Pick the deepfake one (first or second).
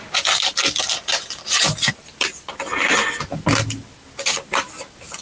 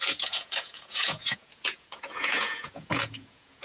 second